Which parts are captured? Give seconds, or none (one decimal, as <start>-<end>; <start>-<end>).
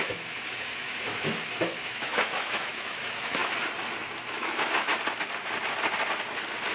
3.4-4.3; 4.9-6.7